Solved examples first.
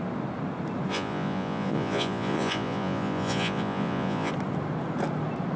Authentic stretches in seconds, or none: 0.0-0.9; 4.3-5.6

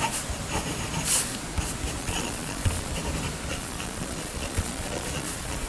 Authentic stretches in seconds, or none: 0.0-2.0; 2.9-3.5